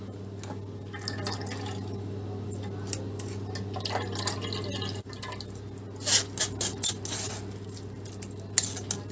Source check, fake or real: real